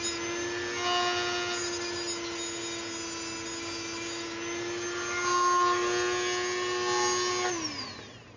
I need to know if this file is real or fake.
real